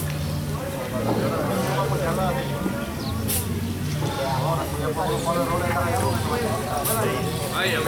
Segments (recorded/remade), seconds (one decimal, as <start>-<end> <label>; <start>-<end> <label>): 0.0-7.9 recorded